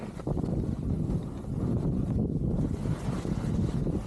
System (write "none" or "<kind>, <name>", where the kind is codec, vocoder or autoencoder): none